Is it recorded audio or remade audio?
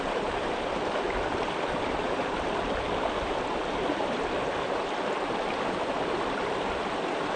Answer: recorded